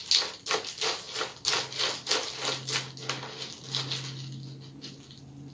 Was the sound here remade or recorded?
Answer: recorded